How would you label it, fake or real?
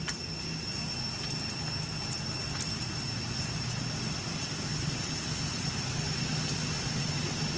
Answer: real